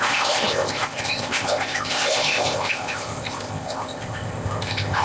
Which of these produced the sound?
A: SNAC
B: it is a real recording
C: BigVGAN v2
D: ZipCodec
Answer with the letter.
D